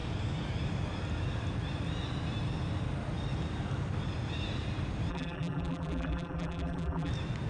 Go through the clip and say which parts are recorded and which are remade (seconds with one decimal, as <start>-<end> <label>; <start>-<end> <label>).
0.0-5.1 recorded; 5.1-7.1 remade; 7.1-7.5 recorded